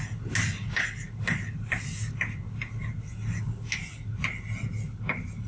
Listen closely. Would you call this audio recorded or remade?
recorded